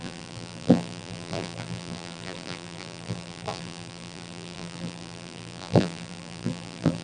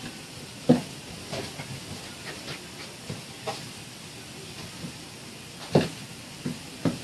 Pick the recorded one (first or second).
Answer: second